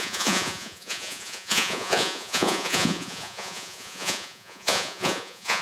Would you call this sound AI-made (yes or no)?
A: yes